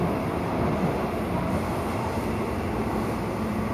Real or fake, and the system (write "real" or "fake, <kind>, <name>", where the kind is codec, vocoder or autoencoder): real